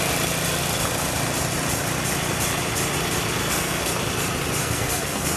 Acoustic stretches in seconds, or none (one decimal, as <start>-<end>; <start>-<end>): 0.0-3.4; 3.9-4.6